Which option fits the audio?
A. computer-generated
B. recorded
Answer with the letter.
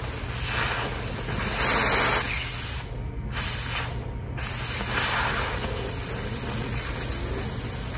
B